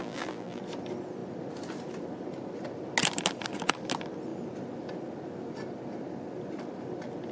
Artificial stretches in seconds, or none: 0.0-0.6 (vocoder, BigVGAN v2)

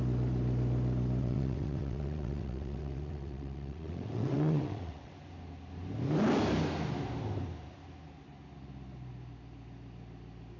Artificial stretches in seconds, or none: 1.2-5.1 (vocoder, WaveNeXt)

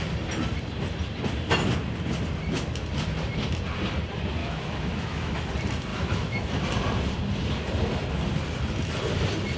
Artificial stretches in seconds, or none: 4.4-5.4 (autoencoder, DAC-VAE); 5.9-6.6